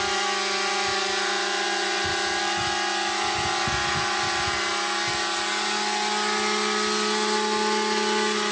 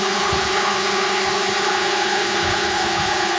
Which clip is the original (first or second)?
first